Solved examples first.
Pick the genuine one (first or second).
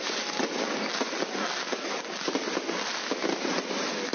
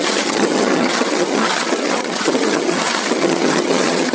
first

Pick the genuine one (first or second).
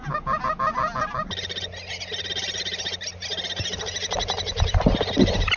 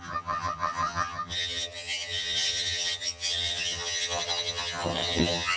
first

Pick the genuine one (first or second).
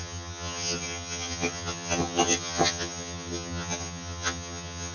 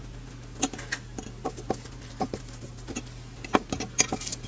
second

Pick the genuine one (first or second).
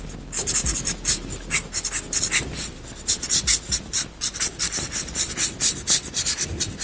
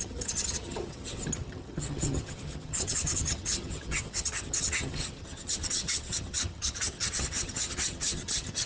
first